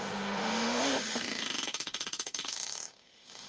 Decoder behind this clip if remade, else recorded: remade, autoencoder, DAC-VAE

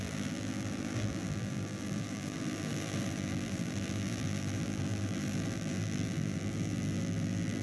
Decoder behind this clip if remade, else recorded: remade, vocoder, BigVGAN v2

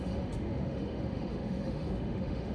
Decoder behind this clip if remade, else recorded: remade, autoencoder, DAC-VAE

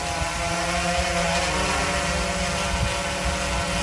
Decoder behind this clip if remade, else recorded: recorded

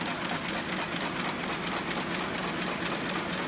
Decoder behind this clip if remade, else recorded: recorded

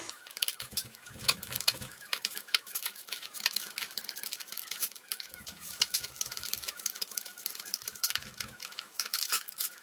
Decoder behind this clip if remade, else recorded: remade, autoencoder, DAC-VAE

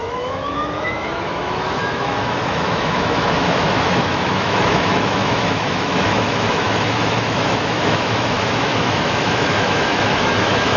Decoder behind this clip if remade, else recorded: remade, autoencoder, DAC-VAE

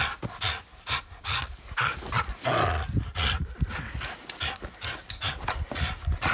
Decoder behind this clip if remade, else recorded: recorded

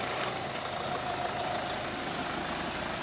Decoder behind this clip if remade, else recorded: remade, vocoder, BigVGAN v2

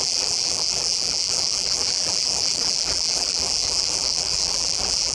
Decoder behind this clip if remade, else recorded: remade, vocoder, BigVGAN v2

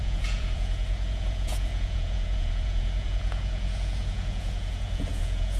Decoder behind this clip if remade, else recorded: remade, vocoder, Vocos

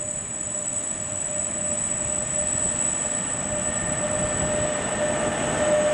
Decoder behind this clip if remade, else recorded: recorded